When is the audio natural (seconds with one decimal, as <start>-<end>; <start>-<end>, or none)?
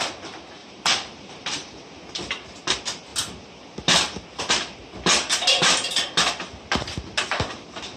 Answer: 0.0-0.6; 2.1-8.0